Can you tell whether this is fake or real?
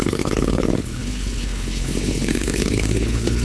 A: fake